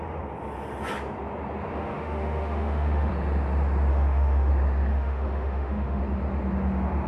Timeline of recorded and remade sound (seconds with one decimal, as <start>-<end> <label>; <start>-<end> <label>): 0.0-1.7 recorded; 1.7-3.1 remade; 3.1-3.9 recorded; 3.9-4.5 remade; 4.5-4.9 recorded; 4.9-6.0 remade; 6.0-7.1 recorded